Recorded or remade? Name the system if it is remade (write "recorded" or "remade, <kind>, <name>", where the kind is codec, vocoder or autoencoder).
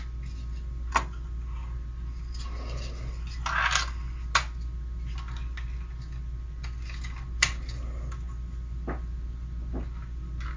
recorded